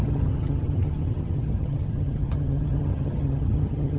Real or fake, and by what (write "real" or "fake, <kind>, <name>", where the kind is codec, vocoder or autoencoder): fake, vocoder, HiFi-GAN